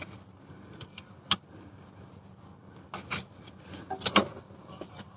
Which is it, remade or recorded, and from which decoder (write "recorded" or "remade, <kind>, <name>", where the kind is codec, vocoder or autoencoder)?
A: recorded